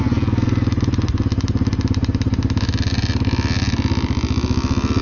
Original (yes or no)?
yes